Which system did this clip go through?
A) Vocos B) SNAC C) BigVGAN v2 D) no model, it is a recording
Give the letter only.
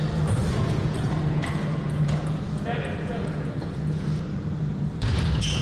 A